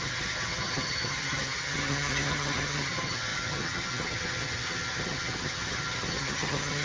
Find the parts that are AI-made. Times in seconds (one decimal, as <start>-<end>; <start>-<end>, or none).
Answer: 0.0-6.8